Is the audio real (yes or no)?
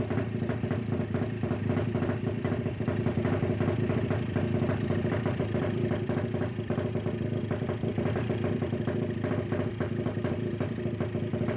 no